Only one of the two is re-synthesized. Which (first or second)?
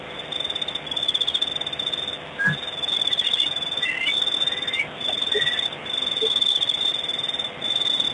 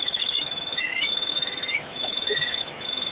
second